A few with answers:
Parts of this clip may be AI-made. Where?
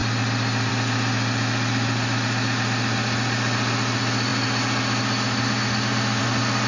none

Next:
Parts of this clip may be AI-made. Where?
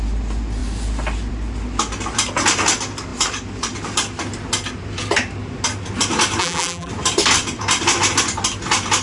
6.4-6.9